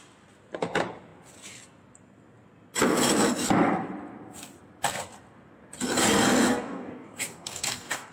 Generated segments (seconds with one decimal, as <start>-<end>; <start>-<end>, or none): 6.5-8.1